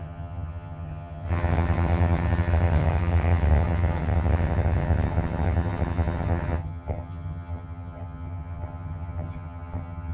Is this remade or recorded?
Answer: remade